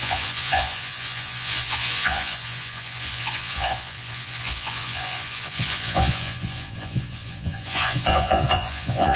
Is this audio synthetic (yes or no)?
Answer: yes